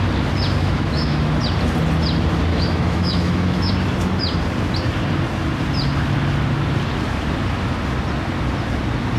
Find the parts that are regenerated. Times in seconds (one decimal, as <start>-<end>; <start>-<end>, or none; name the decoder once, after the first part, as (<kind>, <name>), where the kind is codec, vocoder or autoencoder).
0.6-1.3 (autoencoder, DAC-VAE); 2.5-3.7

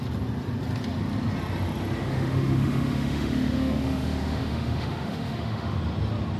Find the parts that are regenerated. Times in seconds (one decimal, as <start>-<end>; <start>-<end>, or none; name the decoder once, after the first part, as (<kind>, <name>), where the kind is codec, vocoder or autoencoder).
2.0-5.8 (autoencoder, DAC-VAE)

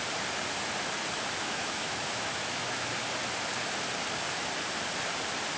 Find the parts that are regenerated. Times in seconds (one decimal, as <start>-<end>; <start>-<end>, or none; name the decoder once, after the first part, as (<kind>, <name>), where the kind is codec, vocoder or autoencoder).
1.4-2.9 (autoencoder, DAC-VAE)

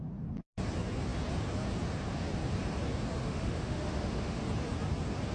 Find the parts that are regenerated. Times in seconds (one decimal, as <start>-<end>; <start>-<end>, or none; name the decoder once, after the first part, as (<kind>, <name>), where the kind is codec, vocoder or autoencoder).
3.2-4.4 (autoencoder, DAC-VAE)

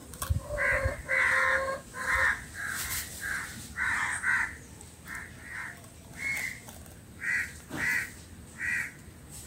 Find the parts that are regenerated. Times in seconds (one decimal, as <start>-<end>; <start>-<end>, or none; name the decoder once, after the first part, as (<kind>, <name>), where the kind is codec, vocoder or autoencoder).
none

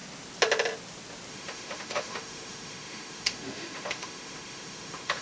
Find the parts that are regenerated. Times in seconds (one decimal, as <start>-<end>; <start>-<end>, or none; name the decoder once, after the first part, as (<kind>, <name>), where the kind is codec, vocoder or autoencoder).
1.3-5.2 (autoencoder, DAC-VAE)